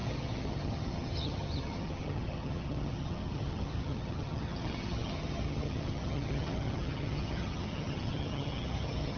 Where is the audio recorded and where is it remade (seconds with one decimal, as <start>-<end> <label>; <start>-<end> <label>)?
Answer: 0.0-9.2 remade